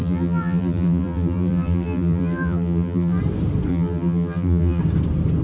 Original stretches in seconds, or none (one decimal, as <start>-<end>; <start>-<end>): 3.2-3.7; 4.8-5.4